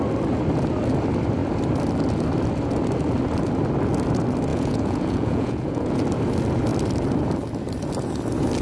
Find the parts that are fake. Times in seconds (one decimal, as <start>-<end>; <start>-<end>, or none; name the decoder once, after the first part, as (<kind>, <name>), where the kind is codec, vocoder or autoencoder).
4.5-6.0 (vocoder, Vocos)

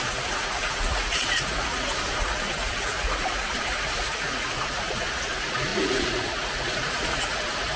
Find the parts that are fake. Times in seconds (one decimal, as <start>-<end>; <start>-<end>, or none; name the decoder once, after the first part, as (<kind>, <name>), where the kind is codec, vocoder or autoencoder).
0.0-7.8 (vocoder, Vocos)

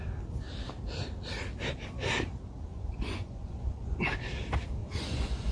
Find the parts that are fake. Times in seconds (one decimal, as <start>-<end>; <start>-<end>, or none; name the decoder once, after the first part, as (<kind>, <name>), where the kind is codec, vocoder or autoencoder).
2.7-4.0 (vocoder, Vocos); 4.8-5.5

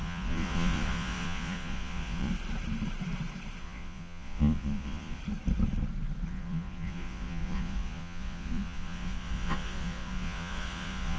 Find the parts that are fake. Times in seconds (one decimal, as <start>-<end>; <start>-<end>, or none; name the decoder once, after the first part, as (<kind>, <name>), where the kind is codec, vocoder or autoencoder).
0.0-2.3 (vocoder, Vocos); 3.6-5.2; 6.3-11.2

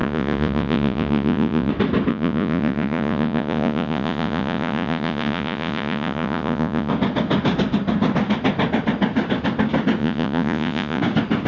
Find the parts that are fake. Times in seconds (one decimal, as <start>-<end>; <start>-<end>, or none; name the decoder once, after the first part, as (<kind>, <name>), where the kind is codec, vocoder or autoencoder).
0.0-1.7 (vocoder, Vocos); 2.1-6.9; 10.0-11.0

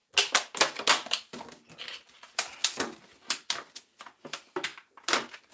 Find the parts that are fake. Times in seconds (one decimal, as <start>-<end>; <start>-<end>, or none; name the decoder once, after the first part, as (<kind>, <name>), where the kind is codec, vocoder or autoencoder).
none

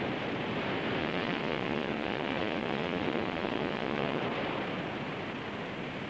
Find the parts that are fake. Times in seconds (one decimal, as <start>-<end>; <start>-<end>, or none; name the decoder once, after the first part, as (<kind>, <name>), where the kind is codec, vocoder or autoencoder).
1.0-4.2 (vocoder, Vocos)